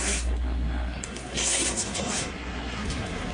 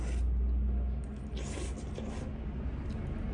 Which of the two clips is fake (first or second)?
first